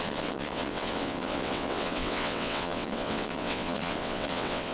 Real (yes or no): no